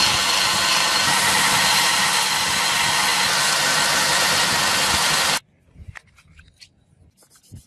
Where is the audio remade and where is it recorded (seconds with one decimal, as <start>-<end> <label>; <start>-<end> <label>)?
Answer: 0.0-7.7 recorded